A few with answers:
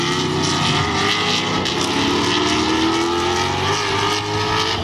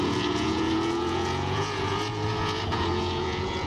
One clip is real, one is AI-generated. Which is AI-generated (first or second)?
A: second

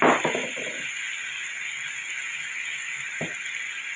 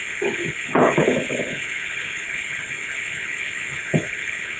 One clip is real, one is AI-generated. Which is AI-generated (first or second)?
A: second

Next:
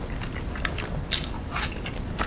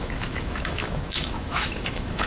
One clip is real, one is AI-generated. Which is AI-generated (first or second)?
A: second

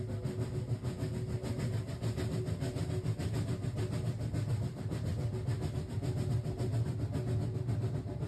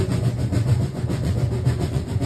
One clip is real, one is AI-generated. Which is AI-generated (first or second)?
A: second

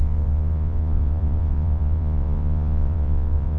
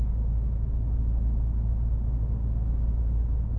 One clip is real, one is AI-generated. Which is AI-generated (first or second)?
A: first